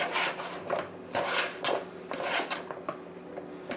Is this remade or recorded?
recorded